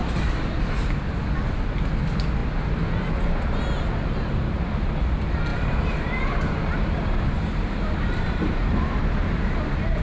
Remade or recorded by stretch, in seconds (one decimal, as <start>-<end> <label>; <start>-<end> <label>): 0.0-0.5 remade; 0.5-5.5 recorded; 5.5-10.0 remade